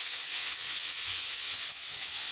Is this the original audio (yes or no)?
no